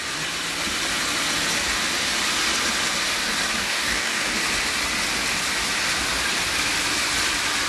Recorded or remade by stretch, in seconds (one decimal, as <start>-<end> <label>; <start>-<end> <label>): 0.0-3.6 recorded; 3.6-4.3 remade; 4.3-7.7 recorded